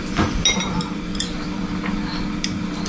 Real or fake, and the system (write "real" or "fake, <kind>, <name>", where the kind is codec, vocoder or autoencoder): real